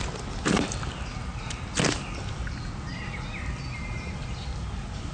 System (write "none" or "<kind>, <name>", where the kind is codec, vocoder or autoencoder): none